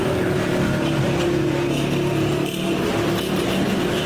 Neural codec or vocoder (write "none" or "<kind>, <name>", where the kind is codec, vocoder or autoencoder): none